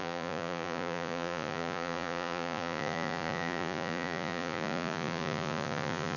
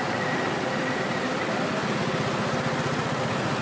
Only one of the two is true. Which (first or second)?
second